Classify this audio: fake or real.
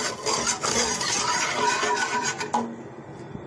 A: real